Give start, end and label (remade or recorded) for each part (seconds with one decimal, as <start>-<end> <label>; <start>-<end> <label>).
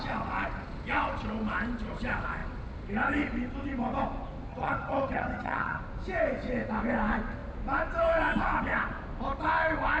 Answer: 0.0-4.5 recorded; 4.5-5.8 remade; 5.8-10.0 recorded